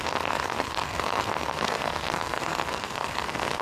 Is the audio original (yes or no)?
no